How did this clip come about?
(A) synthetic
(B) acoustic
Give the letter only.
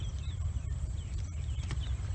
B